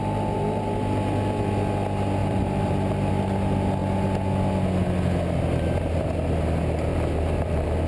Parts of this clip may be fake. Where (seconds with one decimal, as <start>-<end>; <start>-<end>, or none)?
2.2-3.1; 6.9-7.9